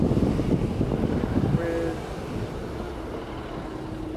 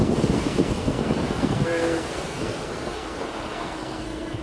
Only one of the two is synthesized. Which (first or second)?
second